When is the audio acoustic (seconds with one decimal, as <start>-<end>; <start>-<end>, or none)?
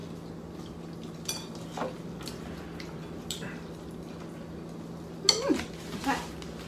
0.0-6.7